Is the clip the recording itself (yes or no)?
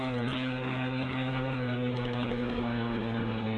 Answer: no